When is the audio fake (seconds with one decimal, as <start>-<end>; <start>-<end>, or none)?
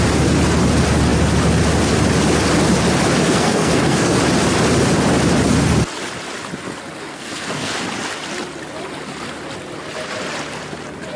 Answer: 3.2-4.2; 7.1-7.7